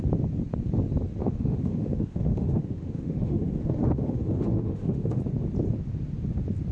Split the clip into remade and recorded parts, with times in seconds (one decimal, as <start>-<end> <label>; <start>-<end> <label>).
0.0-1.2 recorded; 1.2-5.2 remade; 5.2-6.7 recorded